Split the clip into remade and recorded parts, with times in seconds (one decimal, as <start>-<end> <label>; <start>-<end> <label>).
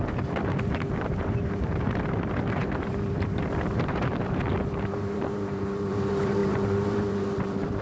0.0-7.8 remade